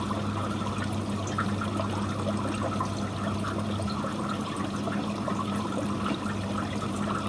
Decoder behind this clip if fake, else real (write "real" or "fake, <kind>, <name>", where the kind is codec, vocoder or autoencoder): real